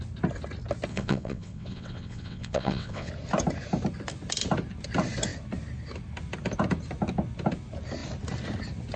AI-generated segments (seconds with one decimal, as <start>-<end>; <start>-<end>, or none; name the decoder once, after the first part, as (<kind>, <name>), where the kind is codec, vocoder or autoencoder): 0.9-3.1 (vocoder, WaveNeXt)